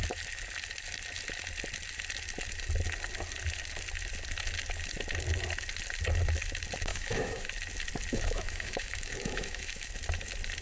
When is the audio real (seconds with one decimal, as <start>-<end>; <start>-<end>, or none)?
0.0-6.9; 7.5-8.1; 9.9-10.6